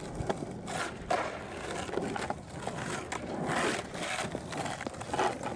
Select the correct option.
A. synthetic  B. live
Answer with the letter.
B